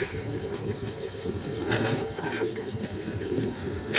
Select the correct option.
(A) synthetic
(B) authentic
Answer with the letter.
A